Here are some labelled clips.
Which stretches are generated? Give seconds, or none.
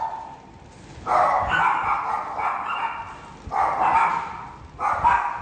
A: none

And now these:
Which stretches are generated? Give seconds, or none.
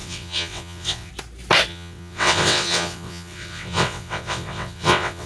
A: 0.0-1.1 (vocoder, WaveNeXt); 1.7-5.3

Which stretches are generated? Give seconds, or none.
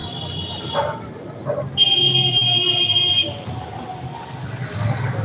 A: none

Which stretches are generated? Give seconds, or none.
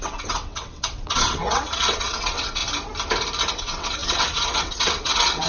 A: 0.0-2.6 (vocoder, WaveNeXt); 3.5-5.5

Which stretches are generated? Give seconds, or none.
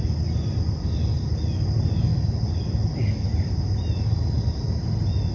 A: none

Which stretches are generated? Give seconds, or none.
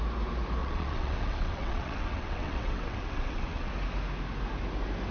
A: 0.6-3.7 (vocoder, WaveNeXt)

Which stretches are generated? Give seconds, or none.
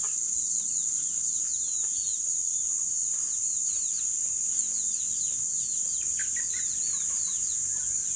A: 0.0-1.4 (vocoder, WaveNeXt)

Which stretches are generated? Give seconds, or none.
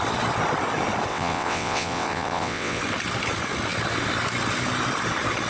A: 1.1-2.8 (vocoder, WaveNeXt)